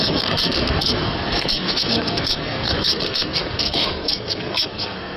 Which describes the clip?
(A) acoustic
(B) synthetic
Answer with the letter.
B